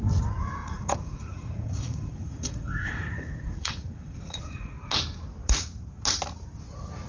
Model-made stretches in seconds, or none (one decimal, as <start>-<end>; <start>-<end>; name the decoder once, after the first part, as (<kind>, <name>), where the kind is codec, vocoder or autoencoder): 0.6-4.9 (vocoder, Vocos)